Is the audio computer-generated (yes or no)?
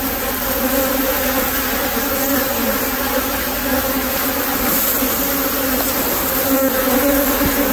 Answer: no